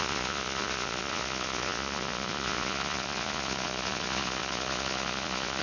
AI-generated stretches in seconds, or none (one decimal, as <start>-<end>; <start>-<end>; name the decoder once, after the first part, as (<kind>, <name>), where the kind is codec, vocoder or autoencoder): 0.0-5.6 (vocoder, Vocos)